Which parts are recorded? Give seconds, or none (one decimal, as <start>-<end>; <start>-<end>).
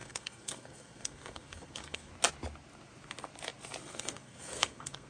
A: 2.1-3.8